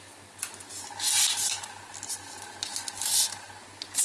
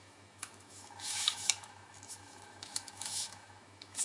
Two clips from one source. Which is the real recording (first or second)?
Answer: first